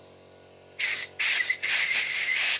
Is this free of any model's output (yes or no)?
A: yes